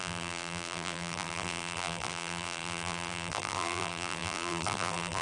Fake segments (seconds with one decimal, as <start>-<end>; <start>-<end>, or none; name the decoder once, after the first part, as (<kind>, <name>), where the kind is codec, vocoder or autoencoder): 0.0-5.2 (vocoder, BigVGAN v2)